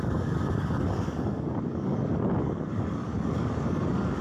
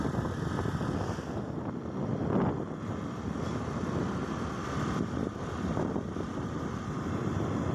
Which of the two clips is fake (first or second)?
first